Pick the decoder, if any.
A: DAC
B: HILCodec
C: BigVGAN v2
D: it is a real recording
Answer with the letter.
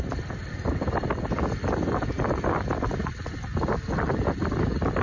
D